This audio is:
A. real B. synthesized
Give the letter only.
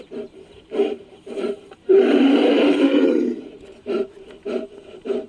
B